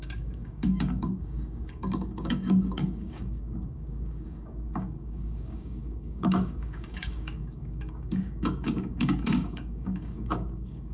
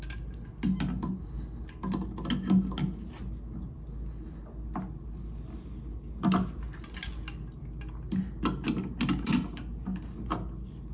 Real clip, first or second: second